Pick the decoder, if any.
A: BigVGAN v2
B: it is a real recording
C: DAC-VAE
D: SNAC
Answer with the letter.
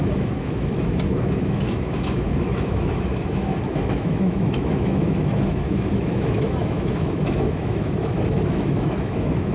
C